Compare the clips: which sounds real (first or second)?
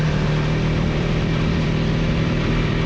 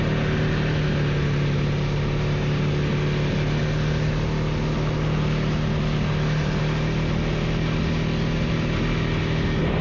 second